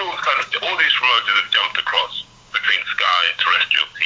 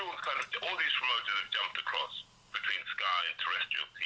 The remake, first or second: first